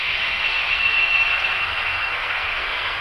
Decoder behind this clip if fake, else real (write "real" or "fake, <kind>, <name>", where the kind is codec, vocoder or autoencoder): fake, codec, SNAC